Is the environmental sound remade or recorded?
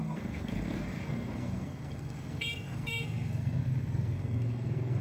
remade